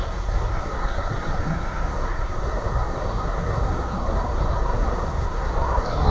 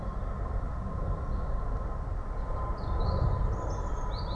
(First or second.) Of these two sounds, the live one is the second